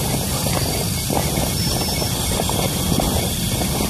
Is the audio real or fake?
real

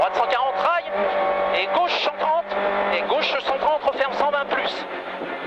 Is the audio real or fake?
real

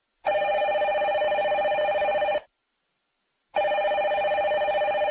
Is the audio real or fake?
real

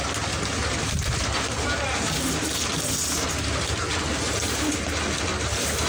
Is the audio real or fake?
real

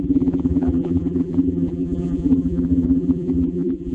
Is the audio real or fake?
fake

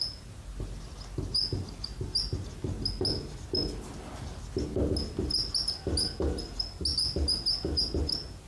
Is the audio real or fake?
real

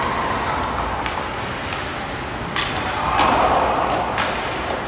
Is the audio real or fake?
real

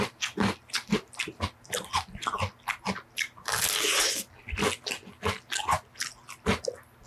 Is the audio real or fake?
real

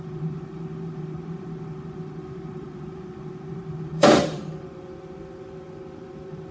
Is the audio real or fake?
fake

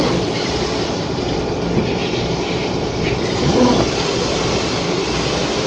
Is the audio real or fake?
fake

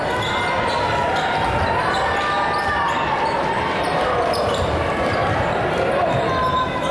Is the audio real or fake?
real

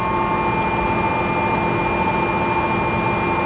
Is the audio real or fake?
real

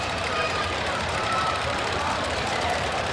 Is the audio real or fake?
fake